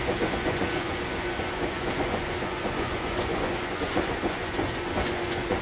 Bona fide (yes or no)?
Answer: no